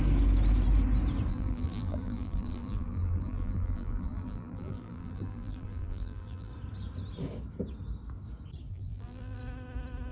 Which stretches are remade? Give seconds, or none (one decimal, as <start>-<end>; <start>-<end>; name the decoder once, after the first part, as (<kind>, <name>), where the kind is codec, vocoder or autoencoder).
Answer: 1.3-6.5 (vocoder, BigVGAN v2); 8.7-9.4